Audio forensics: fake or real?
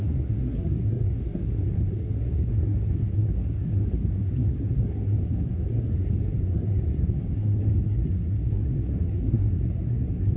fake